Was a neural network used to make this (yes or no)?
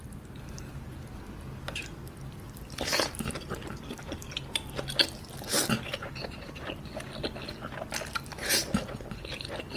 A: no